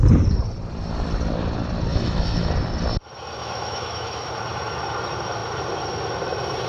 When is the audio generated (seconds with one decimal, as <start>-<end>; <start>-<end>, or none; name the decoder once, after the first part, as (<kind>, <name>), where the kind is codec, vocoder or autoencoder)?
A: 1.9-2.5 (autoencoder, DAC-VAE); 3.4-4.3